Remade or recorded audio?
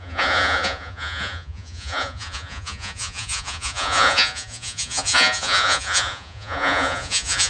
remade